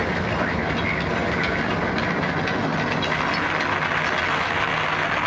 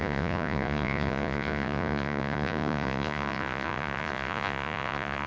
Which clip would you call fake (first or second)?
second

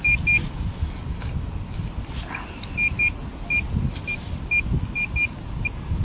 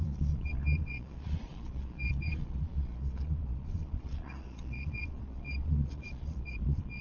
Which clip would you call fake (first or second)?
second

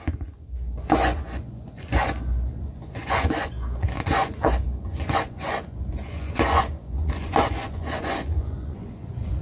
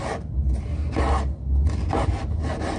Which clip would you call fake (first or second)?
first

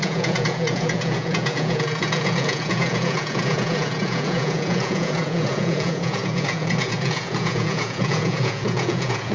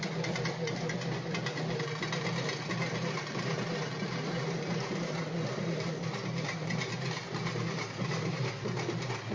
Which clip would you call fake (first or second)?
first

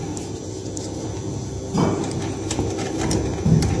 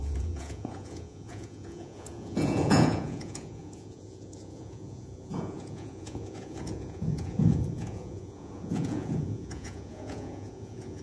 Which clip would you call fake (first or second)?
second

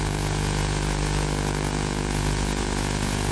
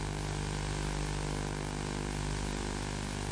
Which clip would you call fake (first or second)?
first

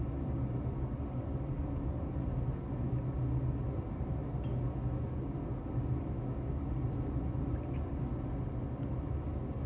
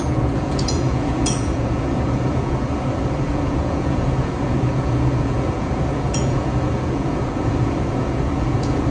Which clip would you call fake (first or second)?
second